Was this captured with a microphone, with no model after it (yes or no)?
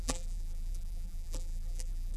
no